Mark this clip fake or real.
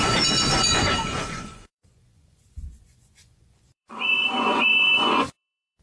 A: fake